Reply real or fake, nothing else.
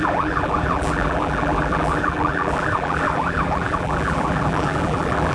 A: fake